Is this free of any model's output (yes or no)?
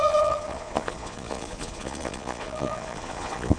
no